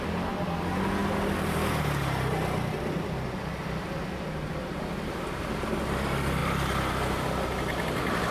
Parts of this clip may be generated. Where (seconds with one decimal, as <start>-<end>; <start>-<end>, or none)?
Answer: none

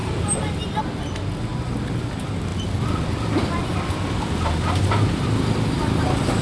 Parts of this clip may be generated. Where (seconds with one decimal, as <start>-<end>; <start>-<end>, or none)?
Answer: 0.0-0.8; 1.5-2.0; 2.5-4.2